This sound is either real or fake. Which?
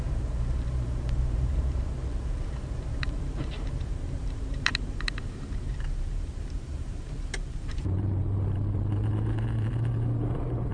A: fake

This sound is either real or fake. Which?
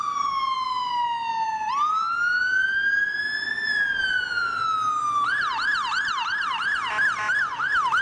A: real